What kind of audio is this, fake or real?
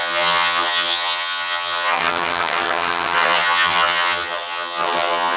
fake